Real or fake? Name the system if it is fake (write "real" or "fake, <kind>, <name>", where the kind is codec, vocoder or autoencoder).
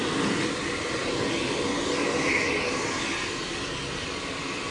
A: real